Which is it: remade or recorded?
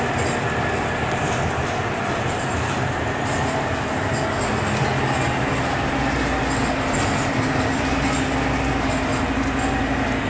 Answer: recorded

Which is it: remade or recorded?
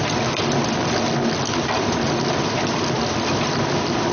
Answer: remade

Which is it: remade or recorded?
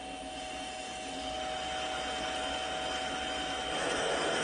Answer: recorded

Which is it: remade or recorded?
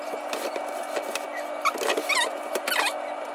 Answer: recorded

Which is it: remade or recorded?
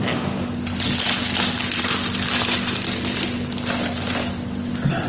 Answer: recorded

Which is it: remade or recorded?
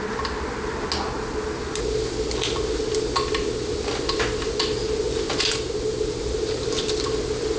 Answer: recorded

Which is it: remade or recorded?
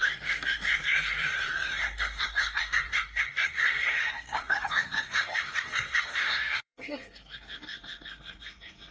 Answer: remade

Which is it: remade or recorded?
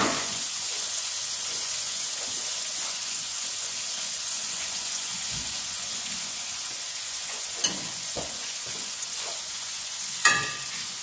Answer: remade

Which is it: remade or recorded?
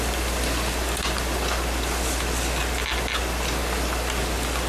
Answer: recorded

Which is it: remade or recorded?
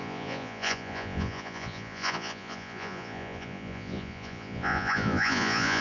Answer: remade